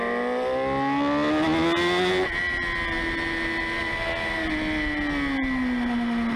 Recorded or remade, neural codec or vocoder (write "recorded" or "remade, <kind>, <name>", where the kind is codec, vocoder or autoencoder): recorded